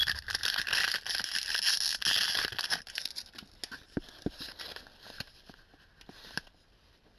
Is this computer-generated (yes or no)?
no